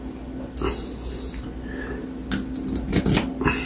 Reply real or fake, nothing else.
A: real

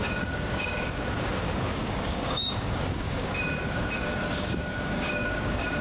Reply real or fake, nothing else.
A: fake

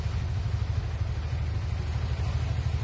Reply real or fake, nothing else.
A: real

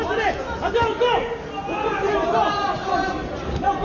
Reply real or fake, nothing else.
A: real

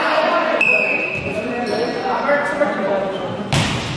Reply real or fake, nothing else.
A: real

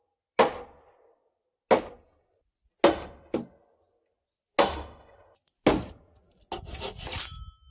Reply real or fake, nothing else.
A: real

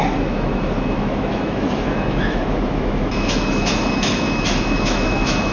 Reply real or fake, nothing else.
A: fake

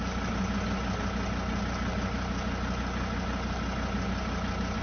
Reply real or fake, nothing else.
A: real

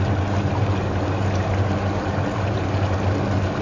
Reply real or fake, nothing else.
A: real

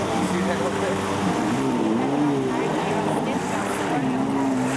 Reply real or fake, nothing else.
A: real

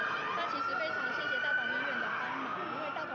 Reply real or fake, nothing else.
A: real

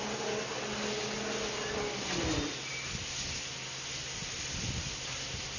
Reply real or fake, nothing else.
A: real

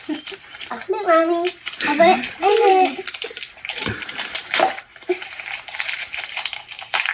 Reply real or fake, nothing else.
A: fake